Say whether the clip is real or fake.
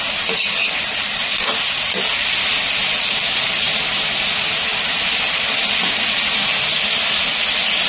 real